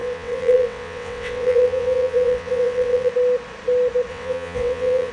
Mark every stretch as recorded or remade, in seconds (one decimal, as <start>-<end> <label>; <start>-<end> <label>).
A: 0.0-3.1 remade; 3.1-4.1 recorded; 4.1-5.1 remade